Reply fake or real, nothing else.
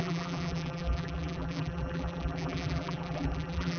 fake